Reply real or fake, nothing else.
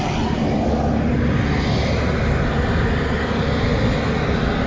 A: real